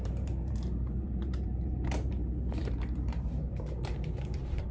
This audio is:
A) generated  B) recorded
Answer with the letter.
A